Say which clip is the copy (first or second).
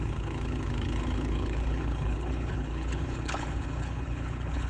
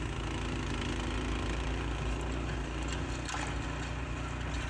first